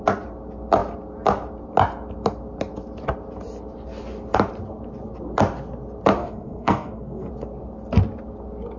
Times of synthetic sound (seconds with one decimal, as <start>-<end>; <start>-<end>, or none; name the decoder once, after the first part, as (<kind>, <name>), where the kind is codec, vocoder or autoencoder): 6.2-7.3 (codec, SNAC)